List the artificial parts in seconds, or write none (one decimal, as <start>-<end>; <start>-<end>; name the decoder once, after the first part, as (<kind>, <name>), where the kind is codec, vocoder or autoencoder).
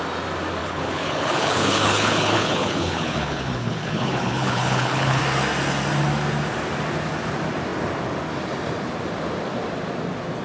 0.6-5.2 (codec, HILCodec)